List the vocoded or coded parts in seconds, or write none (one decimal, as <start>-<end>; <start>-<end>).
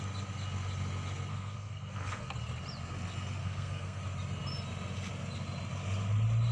1.3-2.3; 3.4-4.0